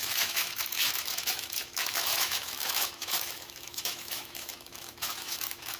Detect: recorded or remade remade